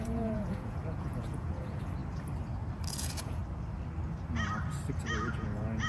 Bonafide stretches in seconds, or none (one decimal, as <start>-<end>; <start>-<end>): 2.0-2.9; 3.4-4.9